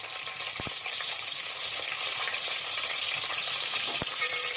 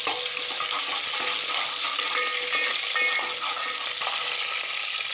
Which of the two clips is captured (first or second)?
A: second